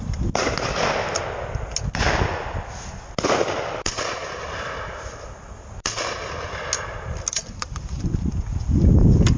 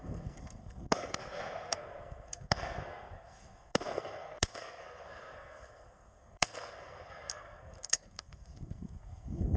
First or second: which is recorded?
first